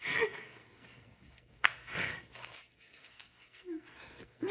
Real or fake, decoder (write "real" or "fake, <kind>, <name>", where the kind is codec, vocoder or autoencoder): fake, codec, SNAC